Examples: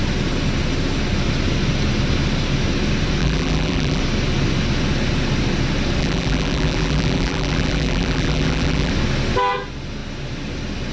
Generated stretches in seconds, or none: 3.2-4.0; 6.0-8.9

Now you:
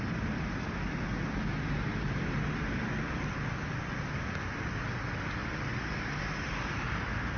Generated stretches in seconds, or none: 5.4-7.0

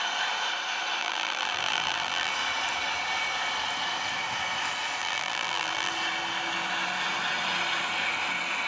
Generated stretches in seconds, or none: 1.0-2.3; 5.0-5.9

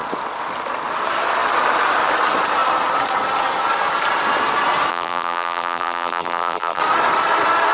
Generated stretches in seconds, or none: 4.9-6.8